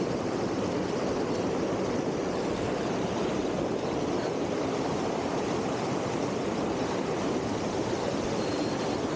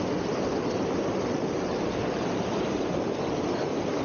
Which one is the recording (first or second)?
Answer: second